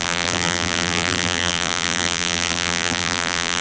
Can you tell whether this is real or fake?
fake